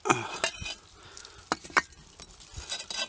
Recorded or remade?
recorded